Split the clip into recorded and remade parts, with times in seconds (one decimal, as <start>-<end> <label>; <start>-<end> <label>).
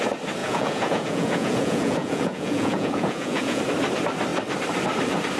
0.0-0.4 recorded; 0.4-3.6 remade; 3.6-5.4 recorded